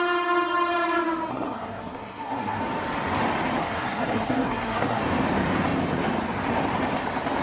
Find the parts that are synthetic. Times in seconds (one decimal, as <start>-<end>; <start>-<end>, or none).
1.3-2.6; 3.6-5.0